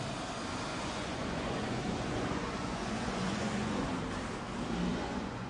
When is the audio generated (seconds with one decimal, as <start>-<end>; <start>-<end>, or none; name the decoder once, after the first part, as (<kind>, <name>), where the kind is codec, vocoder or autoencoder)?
0.7-4.0 (vocoder, Vocos); 4.9-5.5